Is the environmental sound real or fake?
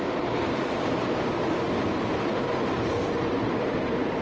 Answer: fake